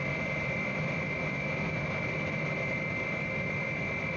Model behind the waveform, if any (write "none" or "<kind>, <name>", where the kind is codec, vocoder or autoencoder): none